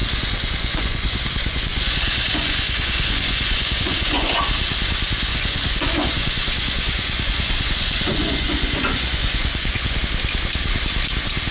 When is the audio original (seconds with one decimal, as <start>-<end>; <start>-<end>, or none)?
4.4-5.3; 10.0-11.5